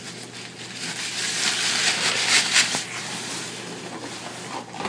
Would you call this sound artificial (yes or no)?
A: no